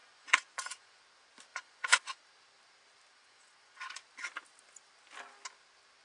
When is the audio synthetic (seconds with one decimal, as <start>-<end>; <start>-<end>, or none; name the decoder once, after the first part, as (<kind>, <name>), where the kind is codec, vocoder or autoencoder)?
0.0-1.0 (vocoder, Vocos); 1.5-2.2; 3.1-3.9

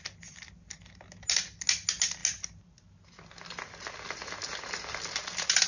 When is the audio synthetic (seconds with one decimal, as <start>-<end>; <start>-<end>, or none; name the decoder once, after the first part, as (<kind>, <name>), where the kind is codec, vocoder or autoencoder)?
none